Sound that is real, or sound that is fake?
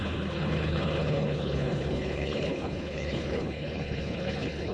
fake